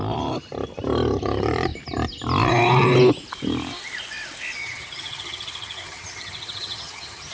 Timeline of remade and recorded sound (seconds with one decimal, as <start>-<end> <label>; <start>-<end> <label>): 0.0-4.6 recorded; 4.6-7.3 remade